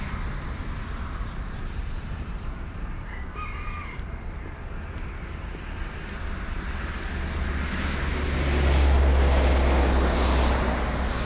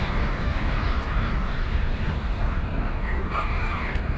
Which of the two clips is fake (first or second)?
second